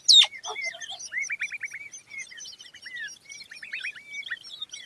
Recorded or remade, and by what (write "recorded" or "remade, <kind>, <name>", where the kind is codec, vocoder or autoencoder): recorded